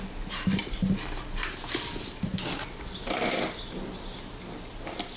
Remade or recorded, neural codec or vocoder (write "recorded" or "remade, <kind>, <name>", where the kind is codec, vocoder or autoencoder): recorded